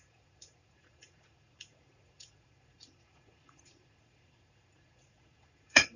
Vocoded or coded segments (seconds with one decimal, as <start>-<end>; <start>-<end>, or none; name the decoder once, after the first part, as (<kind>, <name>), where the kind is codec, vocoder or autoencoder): 0.0-6.0 (vocoder, Vocos)